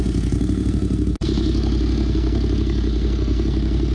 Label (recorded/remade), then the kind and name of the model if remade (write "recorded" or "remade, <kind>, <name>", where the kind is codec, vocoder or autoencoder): remade, codec, SNAC